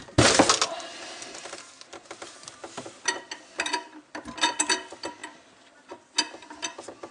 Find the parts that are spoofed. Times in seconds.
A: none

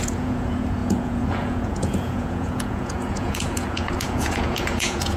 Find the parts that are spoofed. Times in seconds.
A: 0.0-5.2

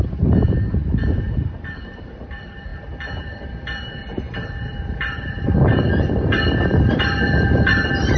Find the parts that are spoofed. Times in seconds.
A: 0.0-8.2

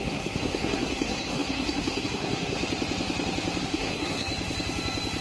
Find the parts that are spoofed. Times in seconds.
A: 0.0-2.6; 3.6-4.3

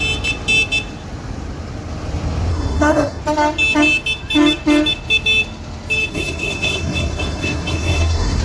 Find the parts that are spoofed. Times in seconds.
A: 2.5-3.2; 6.1-8.4

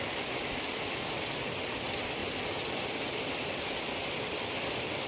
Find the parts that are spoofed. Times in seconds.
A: none